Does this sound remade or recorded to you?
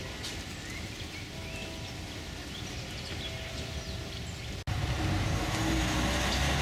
recorded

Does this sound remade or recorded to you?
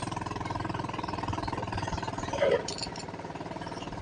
remade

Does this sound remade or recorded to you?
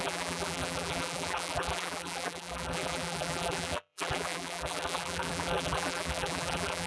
remade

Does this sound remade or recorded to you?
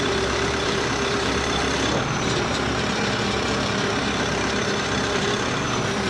remade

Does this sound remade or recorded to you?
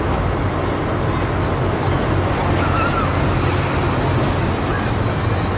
recorded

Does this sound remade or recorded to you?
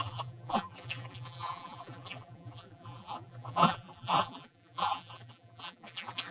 remade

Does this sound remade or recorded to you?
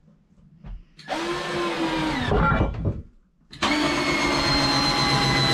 recorded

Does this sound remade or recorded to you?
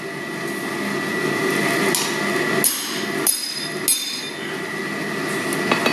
recorded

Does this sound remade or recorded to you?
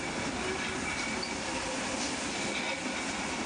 recorded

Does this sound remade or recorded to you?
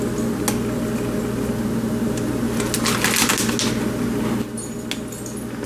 recorded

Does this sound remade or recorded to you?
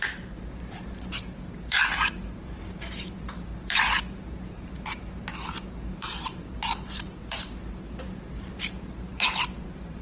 remade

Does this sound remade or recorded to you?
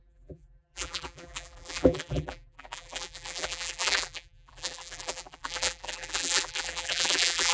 remade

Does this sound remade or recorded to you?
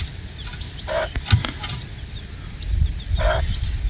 recorded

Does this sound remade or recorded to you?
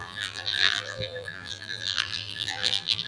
remade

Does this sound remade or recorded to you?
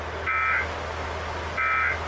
recorded